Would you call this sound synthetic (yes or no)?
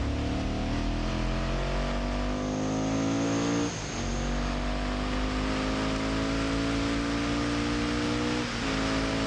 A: no